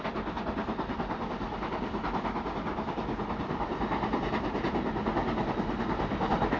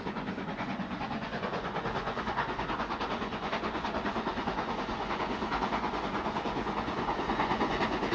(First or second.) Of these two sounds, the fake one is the second